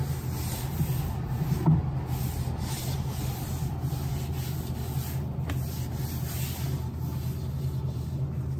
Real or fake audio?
real